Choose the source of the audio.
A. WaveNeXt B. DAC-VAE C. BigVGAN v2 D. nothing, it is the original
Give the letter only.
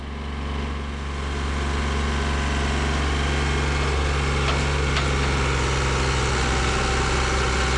D